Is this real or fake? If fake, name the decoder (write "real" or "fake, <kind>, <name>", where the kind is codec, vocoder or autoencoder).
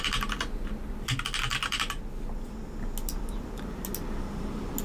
real